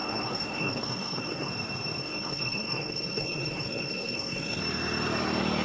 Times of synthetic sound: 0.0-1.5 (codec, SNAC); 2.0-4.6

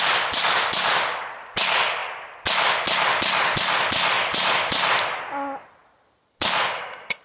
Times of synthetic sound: none

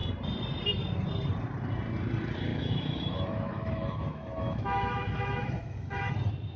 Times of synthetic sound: 2.5-6.1 (autoencoder, DAC-VAE)

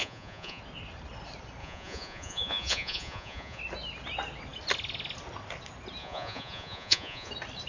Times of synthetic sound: 0.0-0.6 (vocoder, Vocos); 1.6-3.6; 6.0-7.3

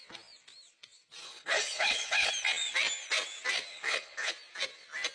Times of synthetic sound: 1.2-2.3 (codec, HILCodec); 3.7-4.3

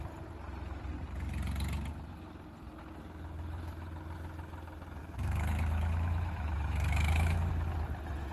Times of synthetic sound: 5.0-7.5 (autoencoder, DAC-VAE)

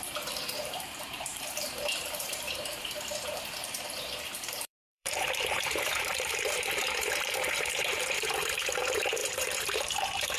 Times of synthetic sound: 0.0-10.4 (vocoder, BigVGAN v2)

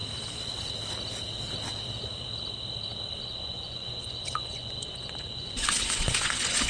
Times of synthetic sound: 3.2-6.7 (vocoder, Vocos)